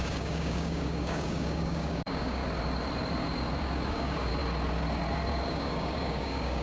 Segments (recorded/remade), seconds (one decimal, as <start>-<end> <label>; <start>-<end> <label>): 0.0-2.4 remade; 2.4-3.9 recorded; 3.9-4.3 remade; 4.3-5.5 recorded; 5.5-6.6 remade